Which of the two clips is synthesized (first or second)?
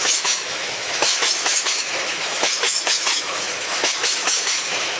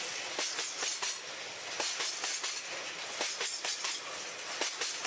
first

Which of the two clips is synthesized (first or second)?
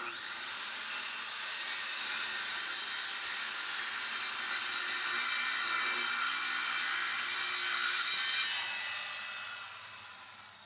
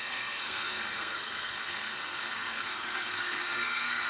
second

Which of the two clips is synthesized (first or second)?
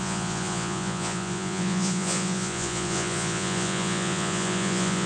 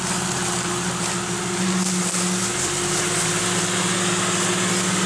first